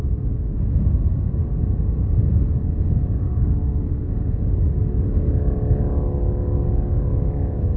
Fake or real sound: real